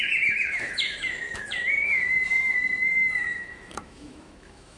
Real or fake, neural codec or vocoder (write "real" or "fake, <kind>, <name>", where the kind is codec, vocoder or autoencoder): fake, autoencoder, DAC-VAE